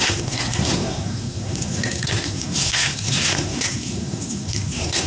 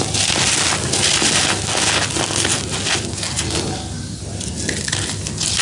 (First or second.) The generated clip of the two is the first